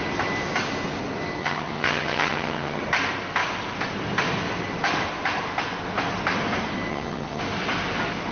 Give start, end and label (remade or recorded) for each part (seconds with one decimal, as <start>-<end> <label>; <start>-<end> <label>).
0.0-1.4 recorded; 1.4-2.8 remade; 2.8-6.9 recorded; 6.9-7.4 remade; 7.4-8.3 recorded